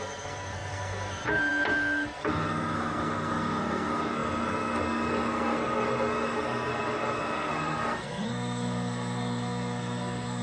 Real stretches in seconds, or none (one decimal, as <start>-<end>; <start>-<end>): none